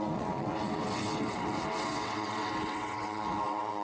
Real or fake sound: fake